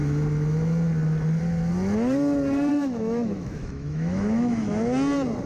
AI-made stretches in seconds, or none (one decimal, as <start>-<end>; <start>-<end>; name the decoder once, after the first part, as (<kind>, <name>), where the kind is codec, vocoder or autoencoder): 2.7-4.7 (autoencoder, DAC-VAE)